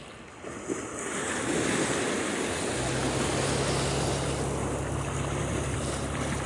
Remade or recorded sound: recorded